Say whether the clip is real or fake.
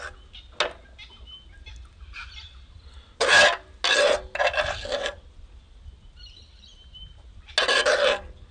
real